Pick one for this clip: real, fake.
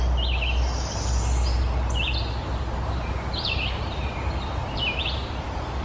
real